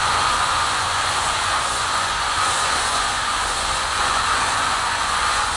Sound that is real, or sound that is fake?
fake